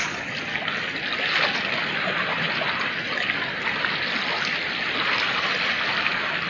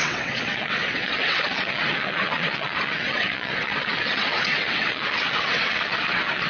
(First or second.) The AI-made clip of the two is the second